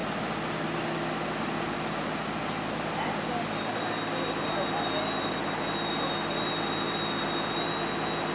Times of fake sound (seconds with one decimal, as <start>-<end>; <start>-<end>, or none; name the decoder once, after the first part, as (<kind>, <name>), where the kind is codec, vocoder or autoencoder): none

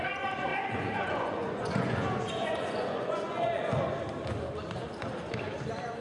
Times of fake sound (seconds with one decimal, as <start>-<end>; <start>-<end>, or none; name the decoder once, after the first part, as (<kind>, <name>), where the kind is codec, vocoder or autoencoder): 0.5-3.6 (vocoder, Vocos)

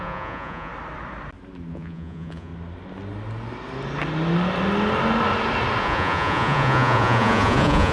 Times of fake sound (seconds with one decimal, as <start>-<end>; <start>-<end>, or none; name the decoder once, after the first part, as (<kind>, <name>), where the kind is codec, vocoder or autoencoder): 0.0-0.7 (vocoder, Vocos); 1.7-2.5; 5.8-7.9

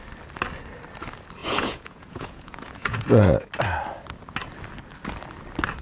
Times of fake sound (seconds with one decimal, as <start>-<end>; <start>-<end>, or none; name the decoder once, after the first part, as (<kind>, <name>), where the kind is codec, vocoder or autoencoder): 1.4-3.5 (vocoder, Vocos)